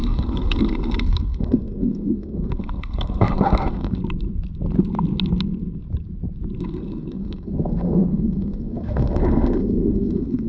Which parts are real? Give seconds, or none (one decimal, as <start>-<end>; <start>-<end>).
4.0-6.6